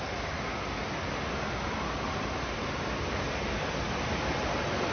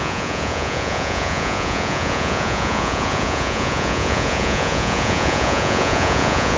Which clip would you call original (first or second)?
first